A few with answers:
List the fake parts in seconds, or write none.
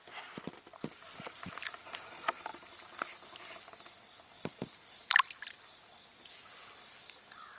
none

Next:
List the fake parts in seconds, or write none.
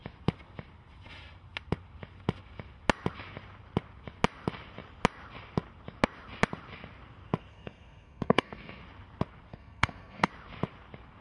7.5-8.8; 9.5-10.3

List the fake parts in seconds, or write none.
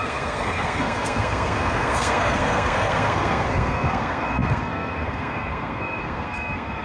0.0-6.8